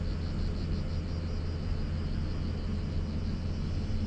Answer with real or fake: real